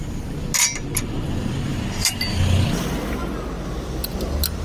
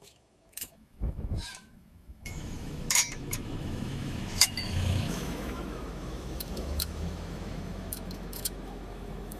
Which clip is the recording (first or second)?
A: first